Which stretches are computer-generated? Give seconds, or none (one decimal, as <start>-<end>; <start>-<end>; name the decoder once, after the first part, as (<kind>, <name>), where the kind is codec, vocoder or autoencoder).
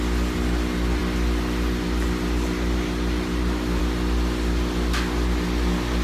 none